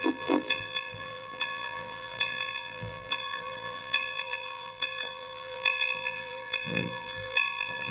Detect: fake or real fake